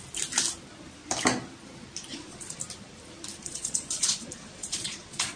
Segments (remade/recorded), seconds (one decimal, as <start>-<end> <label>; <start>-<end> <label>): 0.0-2.1 recorded; 2.1-2.6 remade; 2.6-3.4 recorded; 3.4-5.4 remade